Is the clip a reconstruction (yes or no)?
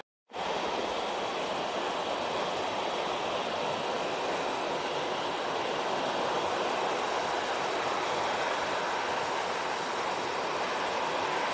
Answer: no